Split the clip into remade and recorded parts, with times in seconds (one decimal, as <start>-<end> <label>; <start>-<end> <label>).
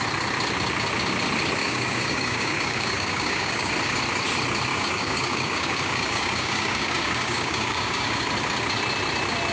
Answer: 0.0-1.6 recorded; 1.6-3.7 remade; 3.7-4.7 recorded; 4.7-8.3 remade; 8.3-9.5 recorded